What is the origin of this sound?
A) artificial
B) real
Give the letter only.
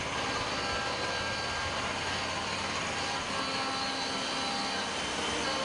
B